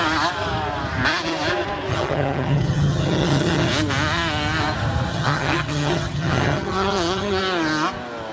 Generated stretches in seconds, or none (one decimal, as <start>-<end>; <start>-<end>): 1.9-3.7; 5.1-7.4